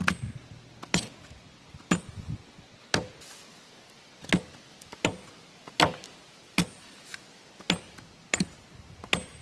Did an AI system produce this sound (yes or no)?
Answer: no